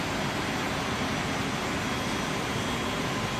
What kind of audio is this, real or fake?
real